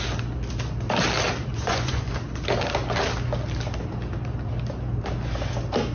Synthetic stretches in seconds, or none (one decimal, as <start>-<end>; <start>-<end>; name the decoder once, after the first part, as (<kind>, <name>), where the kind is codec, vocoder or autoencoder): 1.5-2.1 (vocoder, Vocos)